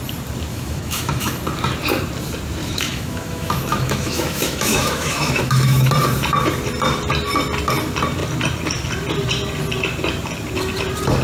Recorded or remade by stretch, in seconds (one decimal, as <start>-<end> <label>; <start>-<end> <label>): 0.0-0.5 recorded; 0.5-1.3 remade; 1.3-2.6 recorded; 2.6-5.9 remade; 5.9-11.2 recorded